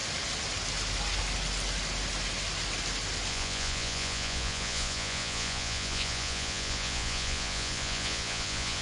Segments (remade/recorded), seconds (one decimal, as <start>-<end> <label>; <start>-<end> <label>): 0.0-3.3 recorded; 3.3-8.8 remade

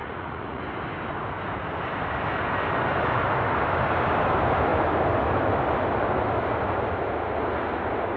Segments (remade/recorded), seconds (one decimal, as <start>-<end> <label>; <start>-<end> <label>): 0.0-0.6 remade; 0.6-8.2 recorded

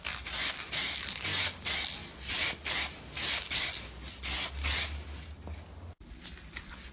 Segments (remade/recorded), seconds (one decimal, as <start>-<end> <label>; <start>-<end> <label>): 0.0-6.9 recorded